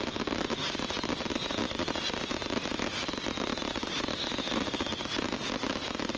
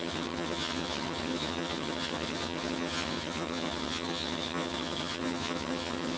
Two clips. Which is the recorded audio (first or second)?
first